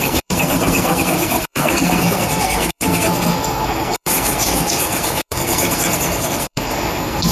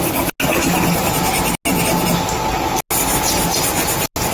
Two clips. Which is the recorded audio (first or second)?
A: second